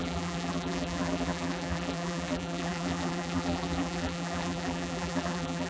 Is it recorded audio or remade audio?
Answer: remade